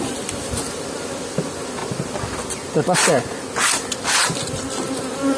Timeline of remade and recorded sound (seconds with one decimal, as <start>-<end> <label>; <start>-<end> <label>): 0.0-5.4 recorded